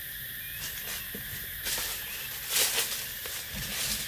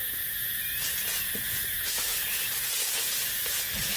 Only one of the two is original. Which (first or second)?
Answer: first